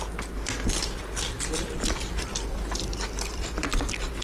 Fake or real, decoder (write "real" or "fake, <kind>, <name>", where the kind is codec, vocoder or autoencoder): real